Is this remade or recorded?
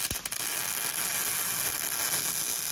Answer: recorded